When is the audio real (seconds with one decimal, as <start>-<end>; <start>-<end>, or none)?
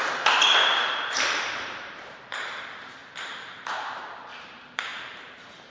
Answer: none